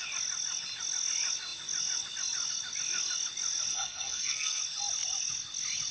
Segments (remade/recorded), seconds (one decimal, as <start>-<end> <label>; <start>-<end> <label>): 0.0-3.7 recorded; 3.7-4.6 remade; 4.6-5.9 recorded